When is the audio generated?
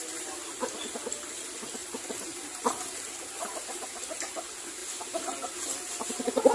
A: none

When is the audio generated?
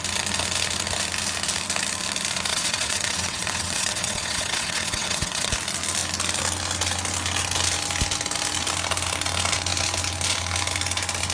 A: 2.5-5.5 (vocoder, WaveNeXt)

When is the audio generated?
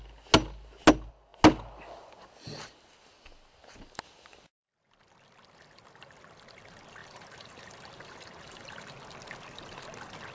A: 7.0-8.9 (vocoder, BigVGAN v2)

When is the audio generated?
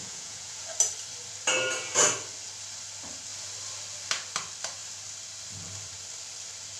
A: 0.0-0.6 (vocoder, Vocos)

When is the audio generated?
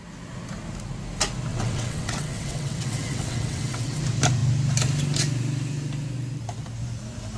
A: 1.5-4.0 (vocoder, WaveNeXt)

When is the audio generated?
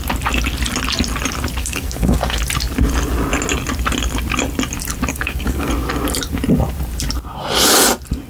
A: 1.6-2.4 (codec, SNAC); 5.1-5.7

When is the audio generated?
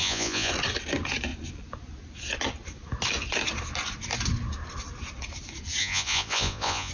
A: 0.0-0.5 (vocoder, Vocos); 5.8-6.9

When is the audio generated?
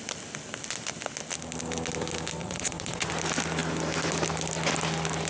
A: 2.4-3.1 (vocoder, Vocos)